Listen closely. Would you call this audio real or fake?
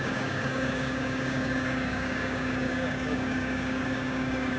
fake